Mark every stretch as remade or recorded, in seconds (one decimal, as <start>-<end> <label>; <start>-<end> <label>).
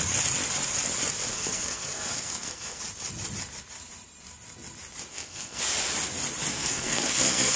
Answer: 0.0-1.3 recorded; 1.3-2.8 remade; 2.8-5.1 recorded; 5.1-5.6 remade; 5.6-6.5 recorded; 6.5-7.6 remade